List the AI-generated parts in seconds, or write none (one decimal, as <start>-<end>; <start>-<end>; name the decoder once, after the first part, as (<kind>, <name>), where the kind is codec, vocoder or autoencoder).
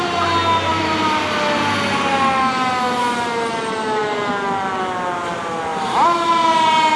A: 0.7-1.2 (vocoder, BigVGAN v2); 5.7-7.0